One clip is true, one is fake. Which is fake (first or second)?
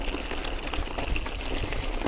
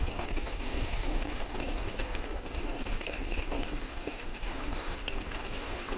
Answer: second